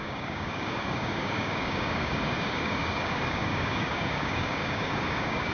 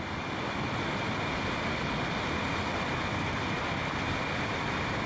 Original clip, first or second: second